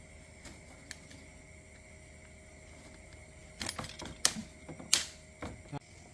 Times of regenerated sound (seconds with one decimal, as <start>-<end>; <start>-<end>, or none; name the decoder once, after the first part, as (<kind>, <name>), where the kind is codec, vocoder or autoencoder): none